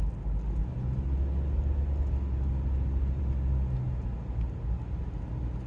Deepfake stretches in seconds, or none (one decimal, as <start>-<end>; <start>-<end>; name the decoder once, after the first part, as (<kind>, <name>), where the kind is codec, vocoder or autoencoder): none